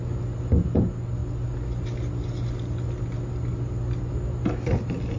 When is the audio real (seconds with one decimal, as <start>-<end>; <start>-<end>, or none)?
0.0-5.2